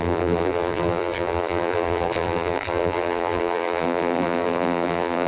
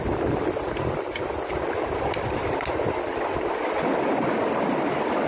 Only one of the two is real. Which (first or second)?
second